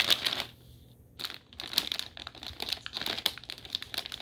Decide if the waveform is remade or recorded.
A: recorded